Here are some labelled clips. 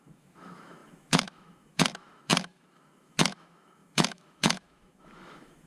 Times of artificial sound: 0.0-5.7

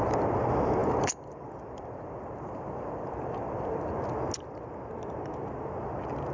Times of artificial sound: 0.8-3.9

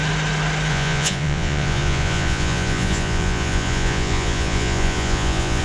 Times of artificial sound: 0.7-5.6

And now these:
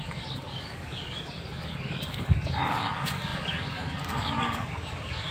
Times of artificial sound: 0.0-5.3

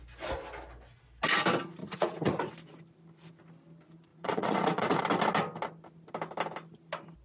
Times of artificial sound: 1.8-2.5; 4.1-5.0

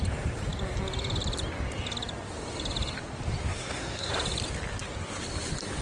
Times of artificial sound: 3.5-4.1